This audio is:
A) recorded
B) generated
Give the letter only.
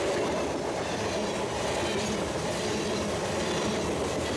A